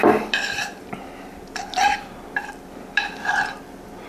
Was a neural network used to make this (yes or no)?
yes